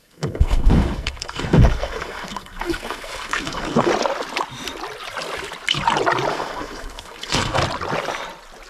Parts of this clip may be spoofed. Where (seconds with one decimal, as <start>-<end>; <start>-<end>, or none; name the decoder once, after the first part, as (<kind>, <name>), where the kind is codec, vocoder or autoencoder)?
0.0-3.9 (codec, SNAC); 6.3-7.6